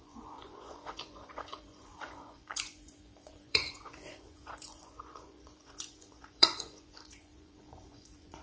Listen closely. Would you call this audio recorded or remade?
remade